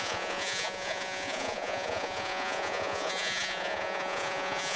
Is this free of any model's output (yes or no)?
no